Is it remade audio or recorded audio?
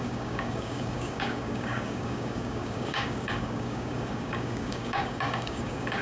remade